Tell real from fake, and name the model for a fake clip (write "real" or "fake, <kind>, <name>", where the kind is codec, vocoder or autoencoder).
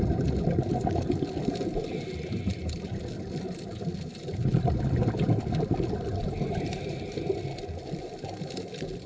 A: real